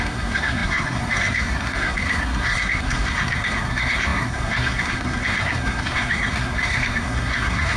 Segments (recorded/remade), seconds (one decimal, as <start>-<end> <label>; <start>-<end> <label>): 0.0-7.8 remade